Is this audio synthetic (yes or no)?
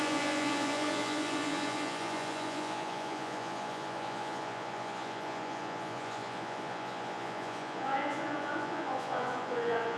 yes